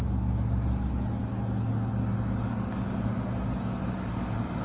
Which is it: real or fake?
real